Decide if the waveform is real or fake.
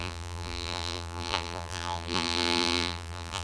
fake